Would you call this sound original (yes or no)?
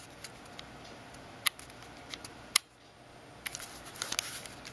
yes